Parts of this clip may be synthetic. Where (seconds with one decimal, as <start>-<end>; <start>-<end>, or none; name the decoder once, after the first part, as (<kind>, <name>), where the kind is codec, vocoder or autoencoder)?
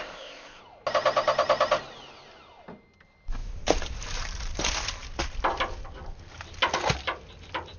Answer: 0.0-0.6 (codec, ZipCodec)